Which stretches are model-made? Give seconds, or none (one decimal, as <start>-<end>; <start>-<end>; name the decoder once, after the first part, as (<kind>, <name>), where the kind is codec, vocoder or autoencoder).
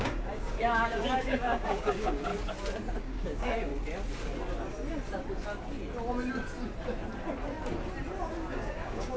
0.0-2.3 (codec, DAC); 3.0-3.7; 8.5-9.2